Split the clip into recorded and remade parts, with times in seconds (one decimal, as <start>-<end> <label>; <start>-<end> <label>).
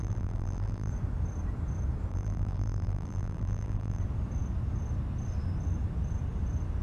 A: 0.0-0.9 remade; 0.9-2.1 recorded; 2.1-4.0 remade; 4.0-6.8 recorded